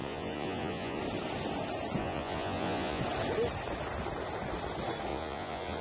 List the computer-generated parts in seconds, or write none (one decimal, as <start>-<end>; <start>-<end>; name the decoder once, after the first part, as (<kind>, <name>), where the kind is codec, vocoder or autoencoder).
0.0-1.0 (vocoder, Vocos); 2.0-3.0; 5.1-5.8